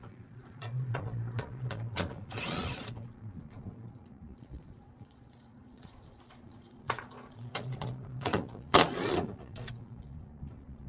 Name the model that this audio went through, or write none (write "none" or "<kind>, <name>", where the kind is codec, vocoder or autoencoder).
vocoder, Vocos